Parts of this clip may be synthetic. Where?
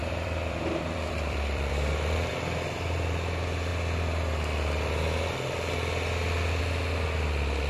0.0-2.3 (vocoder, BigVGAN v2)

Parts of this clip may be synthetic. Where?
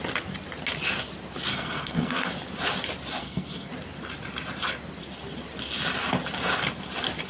1.5-2.3 (codec, SNAC); 3.2-3.7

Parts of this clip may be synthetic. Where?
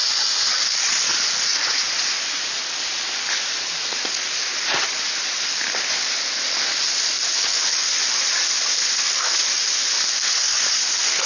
none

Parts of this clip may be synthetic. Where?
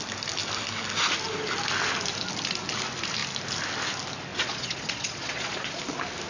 4.3-5.8 (vocoder, Vocos)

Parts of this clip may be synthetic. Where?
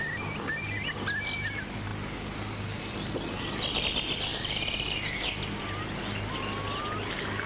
none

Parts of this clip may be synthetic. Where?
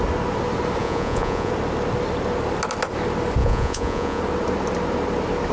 0.8-1.5 (vocoder, Vocos); 3.4-4.2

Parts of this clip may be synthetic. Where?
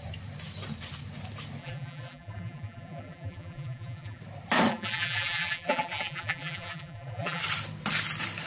1.6-4.2 (vocoder, BigVGAN v2); 4.7-7.4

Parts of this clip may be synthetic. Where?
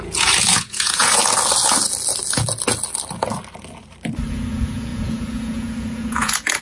0.0-1.2 (vocoder, Vocos); 4.3-6.6